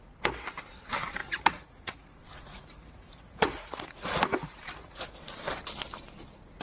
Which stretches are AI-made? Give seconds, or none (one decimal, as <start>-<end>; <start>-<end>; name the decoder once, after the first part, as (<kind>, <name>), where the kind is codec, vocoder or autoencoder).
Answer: 1.2-5.2 (vocoder, Vocos)